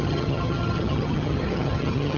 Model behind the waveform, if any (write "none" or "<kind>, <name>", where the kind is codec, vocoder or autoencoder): vocoder, HiFi-GAN